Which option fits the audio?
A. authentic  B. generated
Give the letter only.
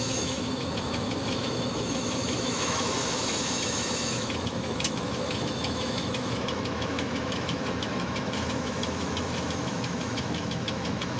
B